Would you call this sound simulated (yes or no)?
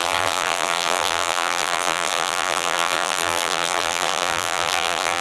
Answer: yes